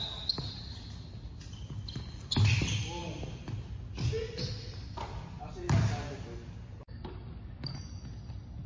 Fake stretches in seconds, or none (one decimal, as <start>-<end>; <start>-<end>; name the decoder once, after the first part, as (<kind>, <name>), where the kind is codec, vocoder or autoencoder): none